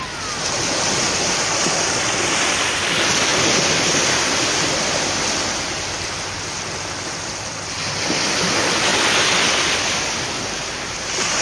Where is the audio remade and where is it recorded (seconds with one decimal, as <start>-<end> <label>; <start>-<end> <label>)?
0.0-3.3 recorded; 3.3-4.3 remade; 4.3-8.9 recorded; 8.9-10.2 remade; 10.2-11.4 recorded